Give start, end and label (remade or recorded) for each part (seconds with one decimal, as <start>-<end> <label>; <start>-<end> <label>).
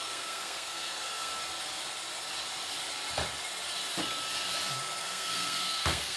0.0-1.3 remade; 1.3-5.0 recorded; 5.0-6.2 remade